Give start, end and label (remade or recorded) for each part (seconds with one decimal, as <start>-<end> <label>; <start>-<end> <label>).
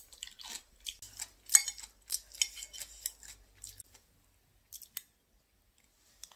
0.0-6.4 recorded